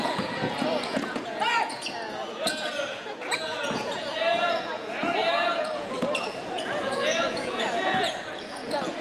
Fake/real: fake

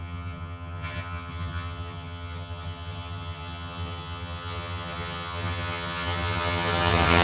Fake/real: fake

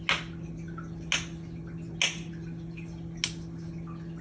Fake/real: real